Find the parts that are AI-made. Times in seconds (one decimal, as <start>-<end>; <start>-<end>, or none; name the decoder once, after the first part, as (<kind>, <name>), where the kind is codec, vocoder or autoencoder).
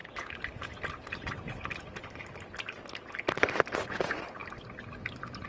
none